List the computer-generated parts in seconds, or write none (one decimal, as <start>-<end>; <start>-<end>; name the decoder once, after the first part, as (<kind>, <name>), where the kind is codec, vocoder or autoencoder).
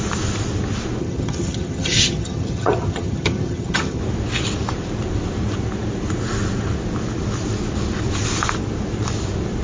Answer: 1.0-4.0 (vocoder, HiFi-GAN)